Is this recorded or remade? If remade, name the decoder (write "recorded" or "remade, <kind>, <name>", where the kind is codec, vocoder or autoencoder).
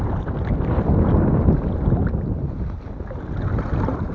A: recorded